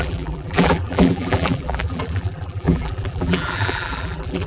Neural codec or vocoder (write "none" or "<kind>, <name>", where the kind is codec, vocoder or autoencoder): vocoder, BigVGAN v2